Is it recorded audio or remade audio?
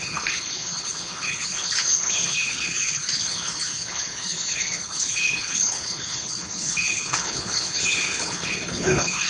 remade